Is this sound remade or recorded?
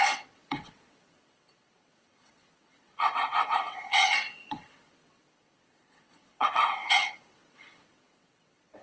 remade